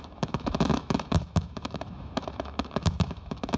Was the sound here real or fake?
fake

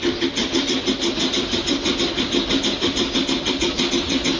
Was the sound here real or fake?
real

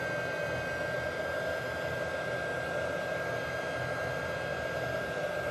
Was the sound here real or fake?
real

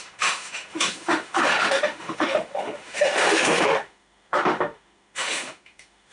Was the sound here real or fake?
fake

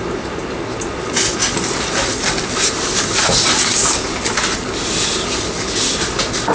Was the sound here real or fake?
real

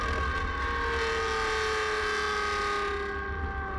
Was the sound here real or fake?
real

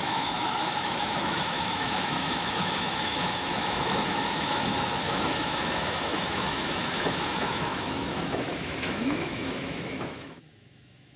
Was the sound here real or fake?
fake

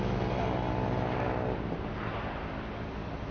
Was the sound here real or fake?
real